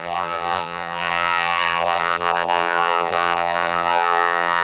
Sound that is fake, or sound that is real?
fake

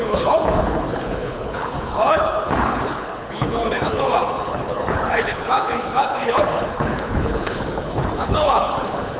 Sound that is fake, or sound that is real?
fake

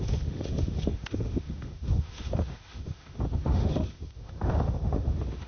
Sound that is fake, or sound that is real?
fake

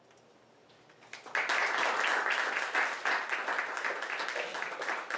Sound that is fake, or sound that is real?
real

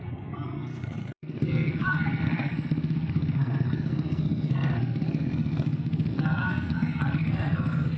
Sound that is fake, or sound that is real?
fake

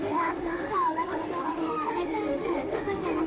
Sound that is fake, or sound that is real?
fake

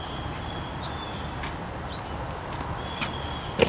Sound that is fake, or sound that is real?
real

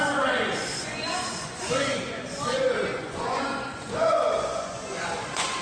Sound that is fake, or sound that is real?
fake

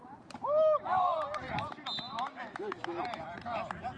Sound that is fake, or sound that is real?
fake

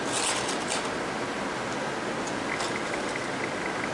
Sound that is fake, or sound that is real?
real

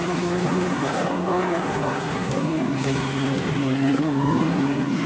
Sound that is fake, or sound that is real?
fake